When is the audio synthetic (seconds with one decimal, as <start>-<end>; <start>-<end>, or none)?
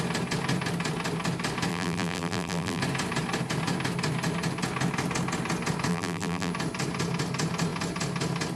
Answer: 1.7-2.8; 5.9-6.5